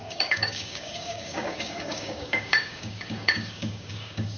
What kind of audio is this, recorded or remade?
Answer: remade